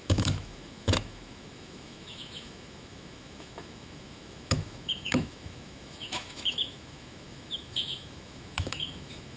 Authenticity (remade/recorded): remade